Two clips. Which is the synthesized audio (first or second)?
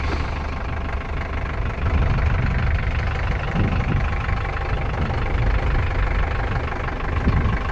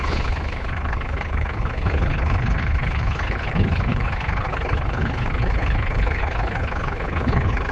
second